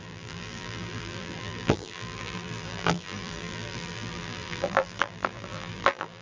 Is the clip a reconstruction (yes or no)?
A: yes